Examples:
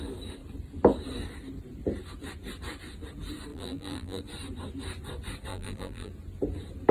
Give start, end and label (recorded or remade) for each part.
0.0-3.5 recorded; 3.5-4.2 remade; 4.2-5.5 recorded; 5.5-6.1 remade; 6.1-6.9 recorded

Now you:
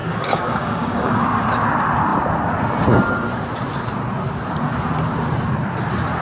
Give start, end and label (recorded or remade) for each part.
0.0-1.2 remade; 1.2-6.2 recorded